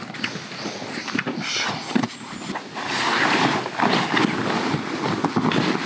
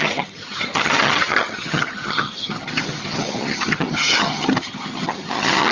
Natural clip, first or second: first